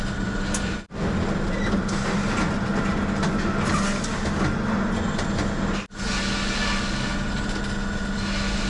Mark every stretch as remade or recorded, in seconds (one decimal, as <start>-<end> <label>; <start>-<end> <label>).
0.0-8.7 recorded